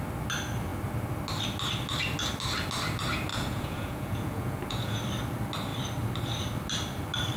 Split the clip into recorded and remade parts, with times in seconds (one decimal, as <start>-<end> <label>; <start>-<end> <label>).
0.0-3.3 recorded; 3.3-5.0 remade; 5.0-7.4 recorded